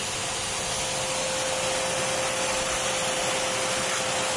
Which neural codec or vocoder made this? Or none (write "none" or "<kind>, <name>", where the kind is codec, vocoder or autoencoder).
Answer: none